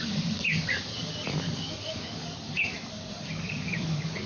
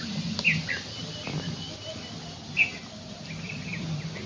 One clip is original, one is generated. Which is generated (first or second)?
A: first